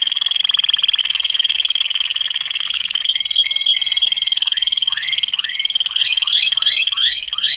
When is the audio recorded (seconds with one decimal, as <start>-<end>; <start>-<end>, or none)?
0.4-1.0